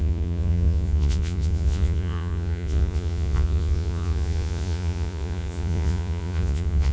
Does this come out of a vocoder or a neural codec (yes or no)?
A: yes